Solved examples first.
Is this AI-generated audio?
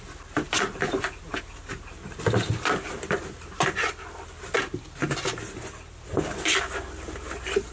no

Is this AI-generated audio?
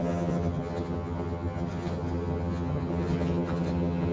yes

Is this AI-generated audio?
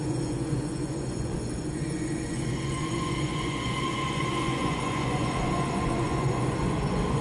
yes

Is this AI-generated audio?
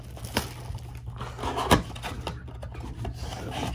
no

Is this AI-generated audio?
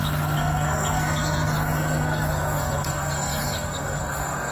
yes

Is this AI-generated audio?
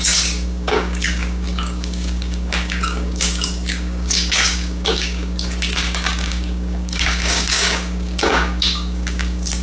yes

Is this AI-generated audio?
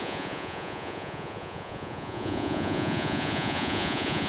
yes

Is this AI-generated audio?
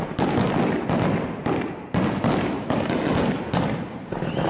no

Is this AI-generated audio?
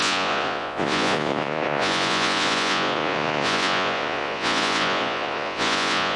yes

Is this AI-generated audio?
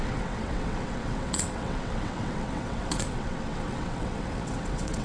yes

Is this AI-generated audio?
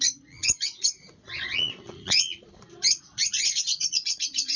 yes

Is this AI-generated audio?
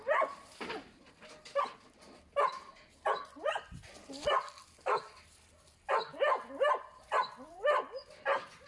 no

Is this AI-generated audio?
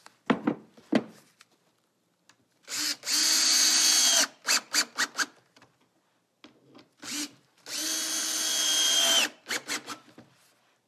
no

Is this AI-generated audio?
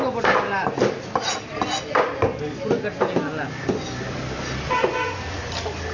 no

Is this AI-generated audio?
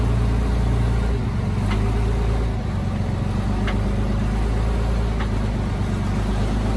no